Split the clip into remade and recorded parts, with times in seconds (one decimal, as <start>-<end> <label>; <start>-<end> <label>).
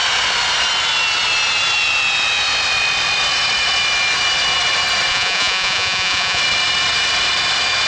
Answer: 0.0-5.1 recorded; 5.1-6.4 remade; 6.4-7.9 recorded